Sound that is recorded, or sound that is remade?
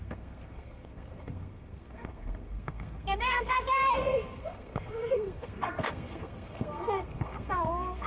remade